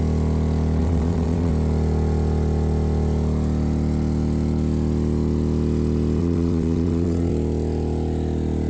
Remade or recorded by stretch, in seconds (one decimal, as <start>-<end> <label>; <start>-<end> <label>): 0.0-0.8 recorded; 0.8-1.5 remade; 1.5-6.2 recorded; 6.2-7.3 remade; 7.3-8.7 recorded